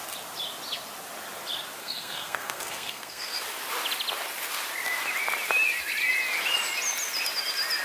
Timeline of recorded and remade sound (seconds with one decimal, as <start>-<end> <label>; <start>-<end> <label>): 0.0-1.8 recorded; 1.8-3.4 remade; 3.4-7.8 recorded